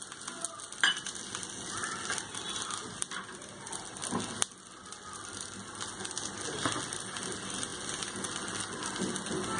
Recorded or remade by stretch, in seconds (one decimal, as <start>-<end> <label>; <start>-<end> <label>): 0.0-9.6 recorded